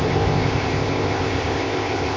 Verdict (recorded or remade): remade